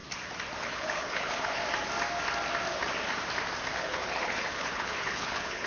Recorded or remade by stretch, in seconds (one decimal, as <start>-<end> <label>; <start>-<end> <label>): 0.0-0.6 recorded; 0.6-1.6 remade; 1.6-3.8 recorded; 3.8-5.7 remade